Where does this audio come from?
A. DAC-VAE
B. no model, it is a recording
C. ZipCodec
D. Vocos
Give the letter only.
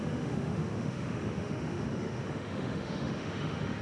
A